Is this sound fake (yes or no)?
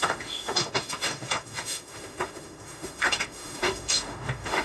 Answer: yes